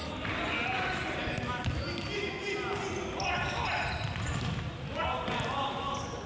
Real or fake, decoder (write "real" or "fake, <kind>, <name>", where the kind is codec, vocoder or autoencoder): real